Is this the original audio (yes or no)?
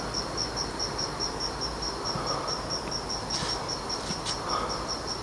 yes